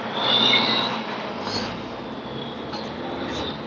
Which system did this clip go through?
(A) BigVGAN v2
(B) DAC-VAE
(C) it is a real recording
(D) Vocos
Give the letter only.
C